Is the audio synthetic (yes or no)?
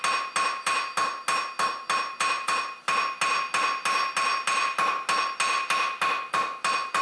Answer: no